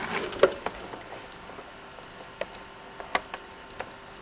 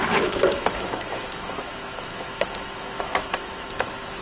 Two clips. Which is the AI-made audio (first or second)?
second